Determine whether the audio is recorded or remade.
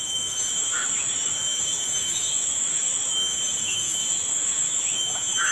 remade